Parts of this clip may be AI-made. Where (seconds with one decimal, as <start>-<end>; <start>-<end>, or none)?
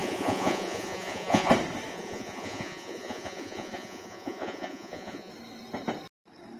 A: 0.0-1.5; 1.9-5.3